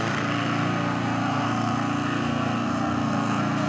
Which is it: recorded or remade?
remade